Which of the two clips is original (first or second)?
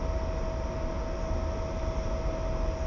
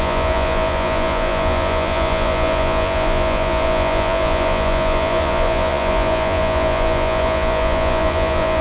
first